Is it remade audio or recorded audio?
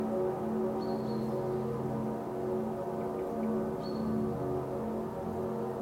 recorded